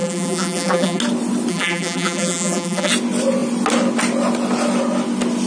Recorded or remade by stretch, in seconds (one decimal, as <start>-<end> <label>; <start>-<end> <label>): 0.0-1.0 remade; 1.0-1.5 recorded; 1.5-2.9 remade; 2.9-5.5 recorded